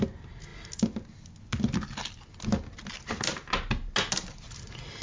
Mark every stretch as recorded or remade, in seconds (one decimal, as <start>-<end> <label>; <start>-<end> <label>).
0.0-5.0 recorded